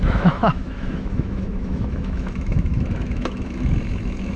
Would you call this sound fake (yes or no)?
yes